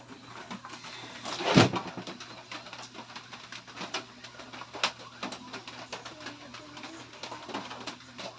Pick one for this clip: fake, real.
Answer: real